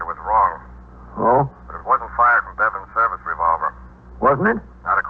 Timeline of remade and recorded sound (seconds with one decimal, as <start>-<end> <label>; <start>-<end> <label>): 0.0-5.1 recorded